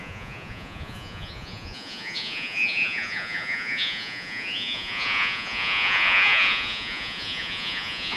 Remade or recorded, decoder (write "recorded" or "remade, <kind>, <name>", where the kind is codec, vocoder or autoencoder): remade, vocoder, Vocos